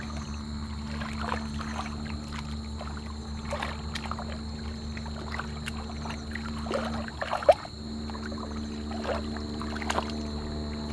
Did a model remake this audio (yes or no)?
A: no